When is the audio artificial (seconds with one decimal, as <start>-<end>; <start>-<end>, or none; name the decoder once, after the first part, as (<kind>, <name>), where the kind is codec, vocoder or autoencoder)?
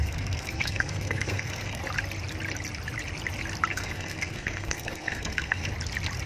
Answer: 0.0-1.8 (codec, SNAC); 3.7-5.7